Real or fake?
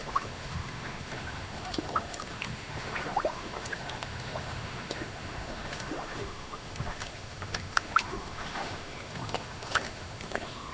fake